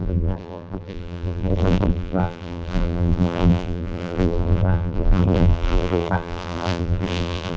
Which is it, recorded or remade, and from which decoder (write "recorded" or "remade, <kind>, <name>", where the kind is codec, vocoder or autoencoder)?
remade, vocoder, BigVGAN v2